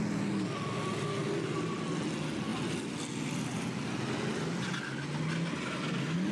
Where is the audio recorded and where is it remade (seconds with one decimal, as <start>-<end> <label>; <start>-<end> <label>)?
0.0-6.3 recorded